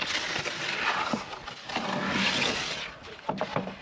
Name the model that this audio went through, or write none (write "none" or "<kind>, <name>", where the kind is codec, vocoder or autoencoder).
none